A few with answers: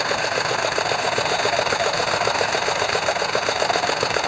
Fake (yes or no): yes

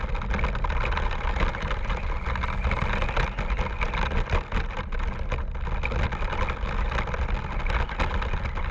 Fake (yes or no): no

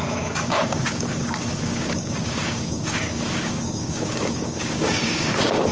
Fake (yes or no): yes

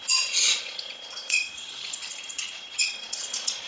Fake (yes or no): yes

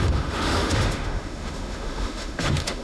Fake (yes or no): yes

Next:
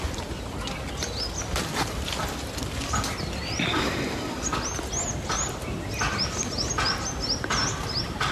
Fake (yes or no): no